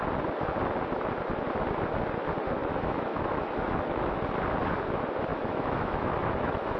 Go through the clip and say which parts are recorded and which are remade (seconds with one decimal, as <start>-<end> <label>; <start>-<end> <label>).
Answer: 0.0-2.6 recorded; 2.6-4.2 remade; 4.2-5.3 recorded; 5.3-6.8 remade